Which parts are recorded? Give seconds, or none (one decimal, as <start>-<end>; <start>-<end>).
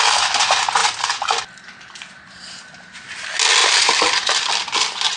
0.0-3.6; 4.5-5.2